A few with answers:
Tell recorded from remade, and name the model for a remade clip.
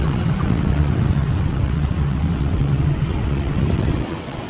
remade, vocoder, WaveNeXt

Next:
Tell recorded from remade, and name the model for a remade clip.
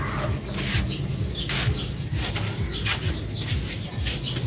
recorded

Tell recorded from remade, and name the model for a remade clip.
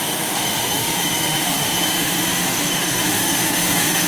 remade, autoencoder, DAC-VAE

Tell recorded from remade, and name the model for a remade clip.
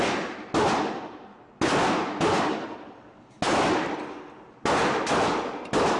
recorded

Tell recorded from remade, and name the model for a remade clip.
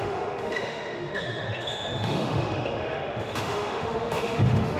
remade, autoencoder, DAC-VAE